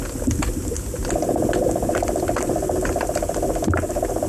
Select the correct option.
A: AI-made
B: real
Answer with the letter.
B